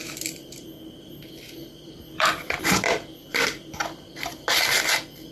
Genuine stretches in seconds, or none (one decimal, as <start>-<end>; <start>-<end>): 0.0-1.6; 4.3-5.3